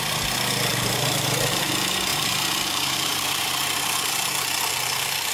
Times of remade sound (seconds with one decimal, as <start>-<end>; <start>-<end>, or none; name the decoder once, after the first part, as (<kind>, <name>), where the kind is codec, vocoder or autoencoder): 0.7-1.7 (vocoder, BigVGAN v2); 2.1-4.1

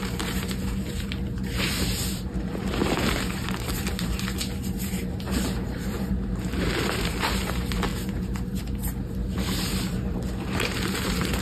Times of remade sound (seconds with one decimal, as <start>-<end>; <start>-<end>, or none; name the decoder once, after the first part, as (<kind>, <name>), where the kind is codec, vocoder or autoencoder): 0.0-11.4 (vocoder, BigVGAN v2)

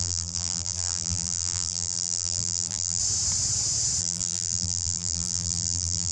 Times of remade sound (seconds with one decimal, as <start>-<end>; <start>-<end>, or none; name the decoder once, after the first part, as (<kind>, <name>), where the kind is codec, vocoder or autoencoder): 0.0-3.0 (vocoder, BigVGAN v2); 4.0-6.1

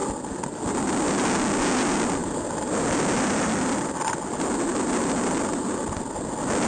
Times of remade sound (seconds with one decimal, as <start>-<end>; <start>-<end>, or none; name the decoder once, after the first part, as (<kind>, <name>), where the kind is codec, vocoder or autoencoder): none

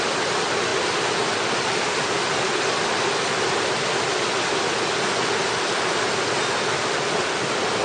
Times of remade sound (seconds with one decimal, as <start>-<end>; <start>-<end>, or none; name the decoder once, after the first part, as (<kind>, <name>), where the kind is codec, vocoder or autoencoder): 5.4-6.1 (vocoder, BigVGAN v2)